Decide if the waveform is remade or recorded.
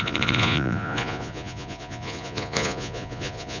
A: remade